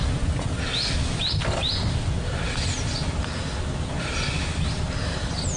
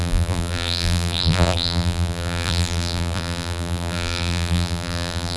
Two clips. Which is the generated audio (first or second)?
second